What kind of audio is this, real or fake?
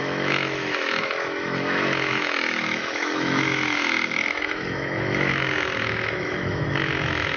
fake